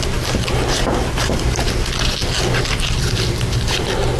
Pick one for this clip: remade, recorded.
recorded